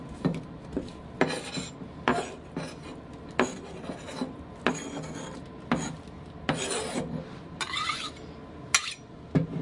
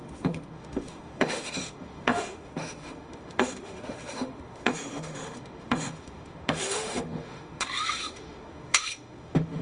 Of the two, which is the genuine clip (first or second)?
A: first